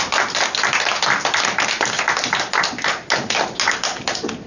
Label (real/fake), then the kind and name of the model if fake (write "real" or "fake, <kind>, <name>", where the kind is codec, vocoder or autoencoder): real